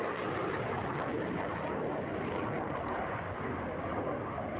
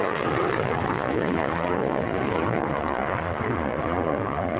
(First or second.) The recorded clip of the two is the first